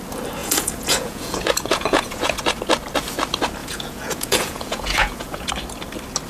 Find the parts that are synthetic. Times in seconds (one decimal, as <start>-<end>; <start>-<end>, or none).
0.4-2.4; 3.6-5.5